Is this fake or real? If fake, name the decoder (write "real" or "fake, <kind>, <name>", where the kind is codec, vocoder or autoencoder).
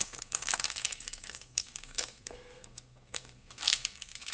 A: fake, codec, SNAC